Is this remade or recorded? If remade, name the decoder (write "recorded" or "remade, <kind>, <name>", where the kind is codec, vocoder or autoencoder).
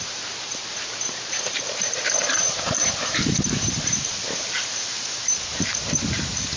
remade, vocoder, BigVGAN v2